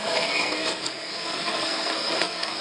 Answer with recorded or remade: remade